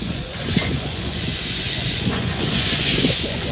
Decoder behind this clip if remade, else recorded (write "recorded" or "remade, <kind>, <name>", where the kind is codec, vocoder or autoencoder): remade, vocoder, Vocos